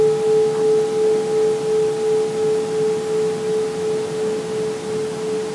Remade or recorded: recorded